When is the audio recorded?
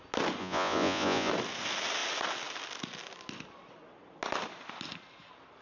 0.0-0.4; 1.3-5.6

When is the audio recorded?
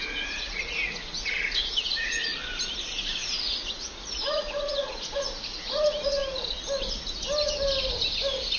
2.3-3.0; 6.2-8.6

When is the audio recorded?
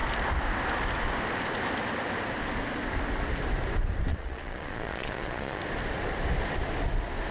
0.0-4.1; 5.6-7.3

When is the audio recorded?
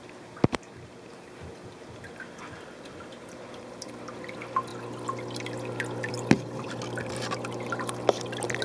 0.0-8.6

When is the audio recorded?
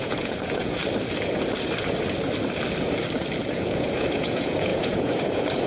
0.8-3.5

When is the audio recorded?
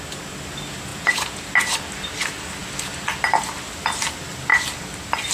0.0-0.9; 1.5-5.3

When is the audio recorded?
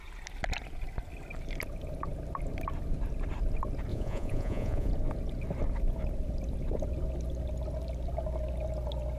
0.0-3.9; 4.9-9.2